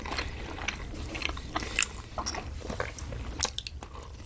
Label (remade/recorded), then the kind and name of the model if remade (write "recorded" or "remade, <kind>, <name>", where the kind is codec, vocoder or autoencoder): recorded